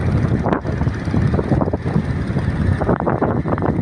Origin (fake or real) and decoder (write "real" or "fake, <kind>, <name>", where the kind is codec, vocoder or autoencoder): real